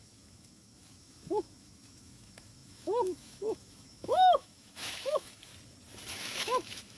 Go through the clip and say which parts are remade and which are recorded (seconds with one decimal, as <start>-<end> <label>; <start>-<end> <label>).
0.0-5.5 remade; 5.5-6.1 recorded; 6.1-7.0 remade